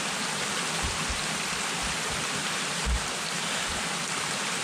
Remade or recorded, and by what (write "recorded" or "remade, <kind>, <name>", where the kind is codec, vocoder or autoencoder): recorded